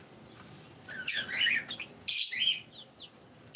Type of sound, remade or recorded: recorded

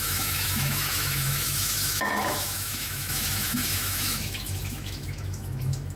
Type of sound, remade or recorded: remade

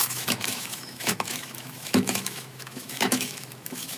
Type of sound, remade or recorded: remade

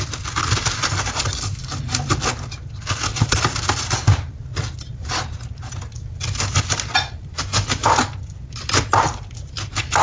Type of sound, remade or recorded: recorded